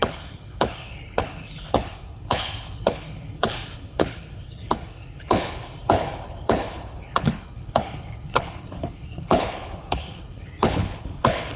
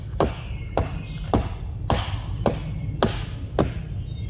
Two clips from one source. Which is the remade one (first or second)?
first